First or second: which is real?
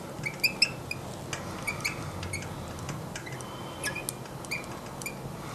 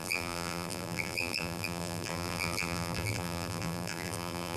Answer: first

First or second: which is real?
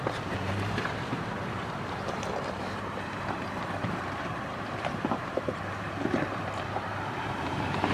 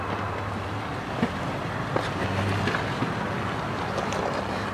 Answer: second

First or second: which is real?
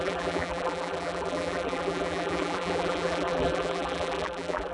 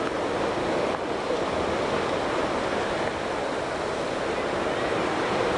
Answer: second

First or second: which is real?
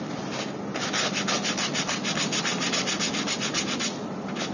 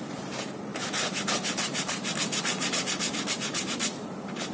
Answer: first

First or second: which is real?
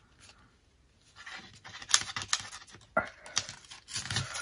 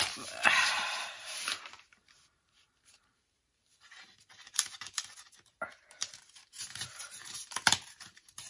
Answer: first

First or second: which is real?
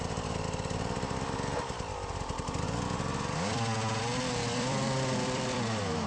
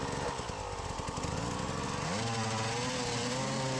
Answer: second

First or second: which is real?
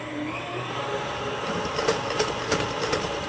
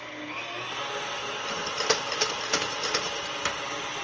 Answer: second